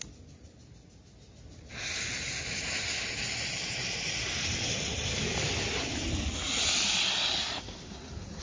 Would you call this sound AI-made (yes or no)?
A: no